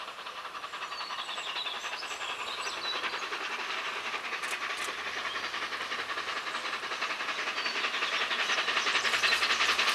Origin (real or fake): real